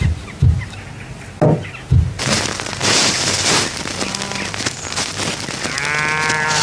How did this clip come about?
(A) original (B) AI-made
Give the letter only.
A